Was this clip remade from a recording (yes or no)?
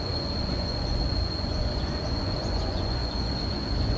yes